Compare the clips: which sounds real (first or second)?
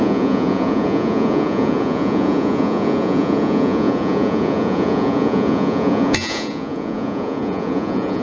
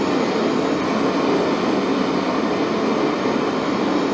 second